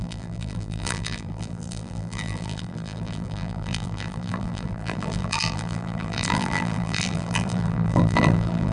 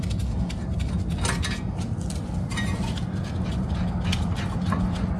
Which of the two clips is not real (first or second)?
first